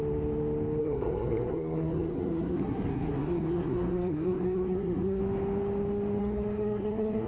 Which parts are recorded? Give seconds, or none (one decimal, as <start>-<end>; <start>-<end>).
0.0-0.8; 5.2-6.2